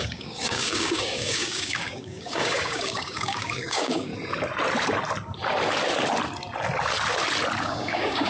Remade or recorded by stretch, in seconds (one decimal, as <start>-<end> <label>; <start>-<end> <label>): 0.0-4.1 remade; 4.1-7.6 recorded; 7.6-8.3 remade